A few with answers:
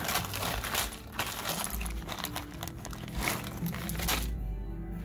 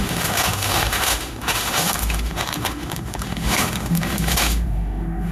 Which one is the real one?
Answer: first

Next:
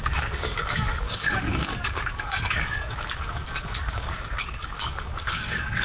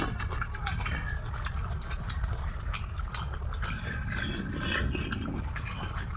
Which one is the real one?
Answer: second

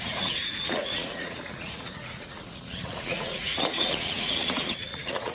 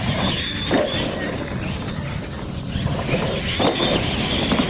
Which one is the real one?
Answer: second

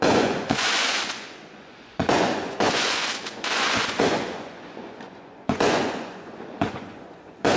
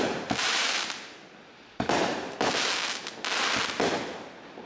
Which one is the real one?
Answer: second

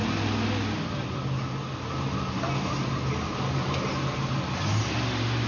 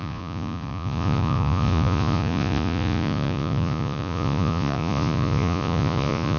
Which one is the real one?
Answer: first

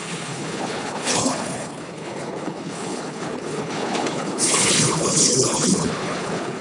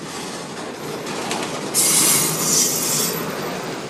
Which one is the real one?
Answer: second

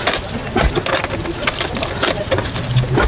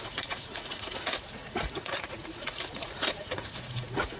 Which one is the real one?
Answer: first